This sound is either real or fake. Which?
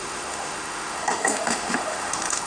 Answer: fake